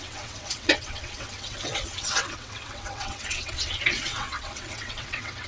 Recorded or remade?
remade